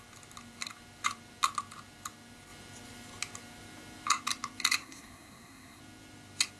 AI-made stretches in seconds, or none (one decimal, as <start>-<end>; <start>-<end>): 4.8-5.8